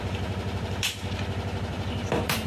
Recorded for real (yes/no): no